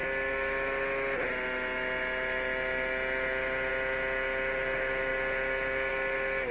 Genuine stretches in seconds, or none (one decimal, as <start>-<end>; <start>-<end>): 0.0-6.5